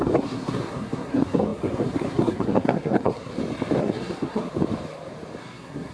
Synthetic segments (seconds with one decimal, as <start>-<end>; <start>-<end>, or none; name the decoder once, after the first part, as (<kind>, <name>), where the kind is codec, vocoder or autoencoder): 0.0-3.3 (codec, SNAC); 3.8-4.5; 5.4-5.9